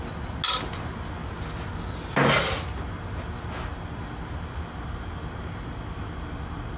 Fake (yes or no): no